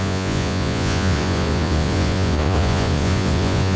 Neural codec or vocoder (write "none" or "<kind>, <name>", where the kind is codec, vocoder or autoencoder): vocoder, Vocos